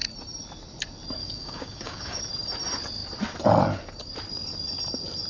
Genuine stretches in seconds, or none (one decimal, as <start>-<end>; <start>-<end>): 0.0-1.2; 2.2-5.3